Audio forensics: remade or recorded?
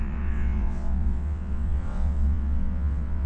remade